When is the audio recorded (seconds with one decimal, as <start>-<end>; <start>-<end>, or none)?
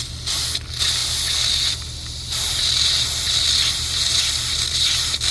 0.0-5.3